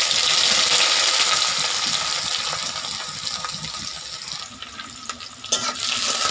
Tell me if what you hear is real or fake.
real